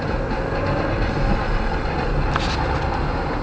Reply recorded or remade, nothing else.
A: recorded